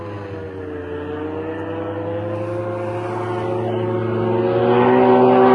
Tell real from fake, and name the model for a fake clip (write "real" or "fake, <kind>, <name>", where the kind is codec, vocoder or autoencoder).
real